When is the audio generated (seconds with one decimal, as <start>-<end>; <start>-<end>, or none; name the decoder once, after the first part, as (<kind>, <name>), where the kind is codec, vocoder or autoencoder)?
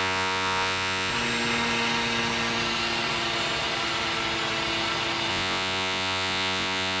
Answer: 0.0-1.1 (vocoder, Vocos); 5.3-7.0